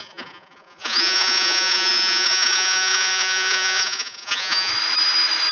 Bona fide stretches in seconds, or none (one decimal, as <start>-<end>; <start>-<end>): 4.7-5.5